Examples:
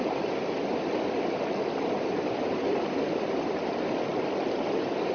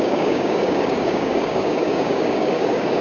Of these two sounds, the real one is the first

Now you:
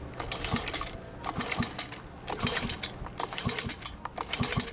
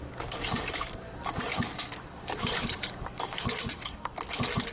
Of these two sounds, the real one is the first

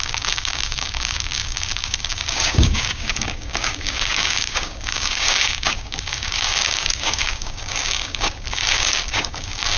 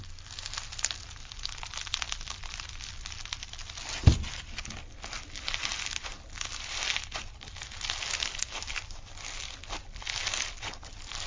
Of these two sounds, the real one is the second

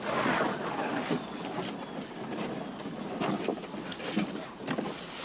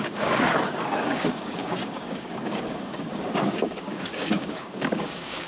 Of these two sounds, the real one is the first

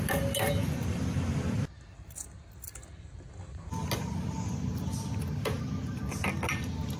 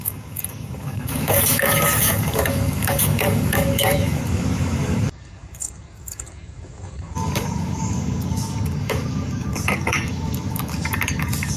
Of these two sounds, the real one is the first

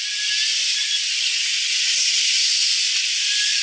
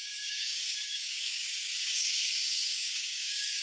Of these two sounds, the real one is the first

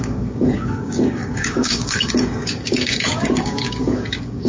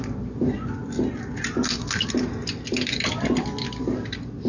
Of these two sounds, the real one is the second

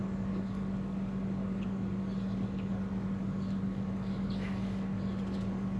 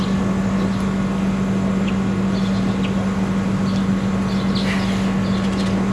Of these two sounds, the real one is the second